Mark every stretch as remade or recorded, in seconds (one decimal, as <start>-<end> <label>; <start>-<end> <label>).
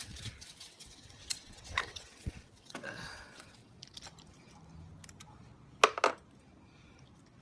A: 0.0-3.6 remade; 3.6-7.4 recorded